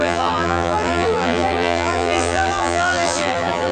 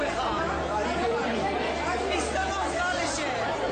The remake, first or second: first